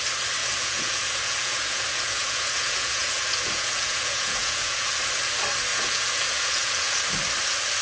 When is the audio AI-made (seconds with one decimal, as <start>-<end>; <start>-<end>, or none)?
0.4-5.0; 5.7-6.9